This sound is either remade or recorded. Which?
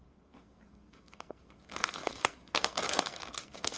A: remade